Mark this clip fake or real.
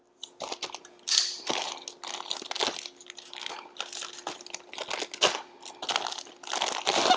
real